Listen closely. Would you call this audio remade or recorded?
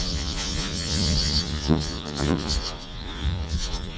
remade